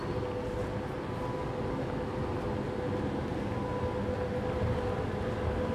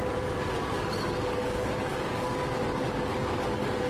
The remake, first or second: second